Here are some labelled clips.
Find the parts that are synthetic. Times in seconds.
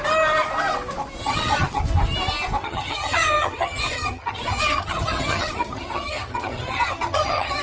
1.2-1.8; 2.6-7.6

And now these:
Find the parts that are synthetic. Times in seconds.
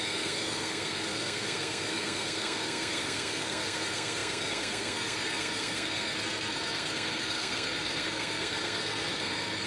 0.0-9.7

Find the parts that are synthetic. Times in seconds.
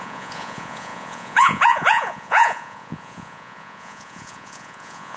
0.0-5.2